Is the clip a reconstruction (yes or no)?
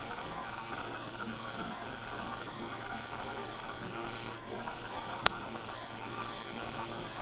yes